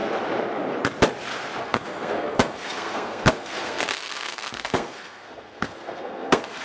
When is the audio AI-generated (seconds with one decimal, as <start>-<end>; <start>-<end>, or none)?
1.6-6.6